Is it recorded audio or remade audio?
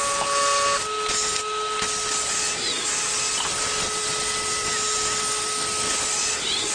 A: recorded